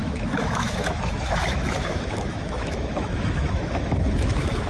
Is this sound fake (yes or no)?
yes